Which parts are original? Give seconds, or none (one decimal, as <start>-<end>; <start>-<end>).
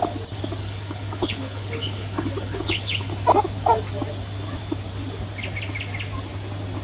0.0-0.6; 3.1-6.8